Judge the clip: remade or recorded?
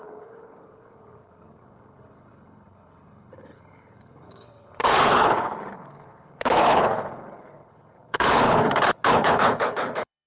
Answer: remade